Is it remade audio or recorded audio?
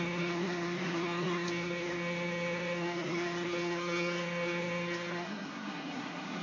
remade